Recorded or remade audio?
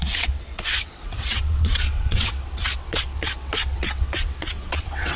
remade